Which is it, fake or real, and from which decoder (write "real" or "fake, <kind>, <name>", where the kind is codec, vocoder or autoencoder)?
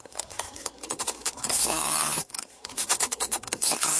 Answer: fake, codec, SNAC